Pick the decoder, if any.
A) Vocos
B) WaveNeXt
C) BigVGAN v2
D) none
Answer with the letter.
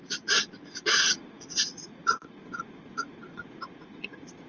A